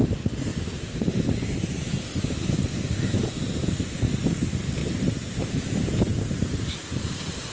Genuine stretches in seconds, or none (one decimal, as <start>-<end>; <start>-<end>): 0.0-0.5; 3.7-4.8; 7.0-7.5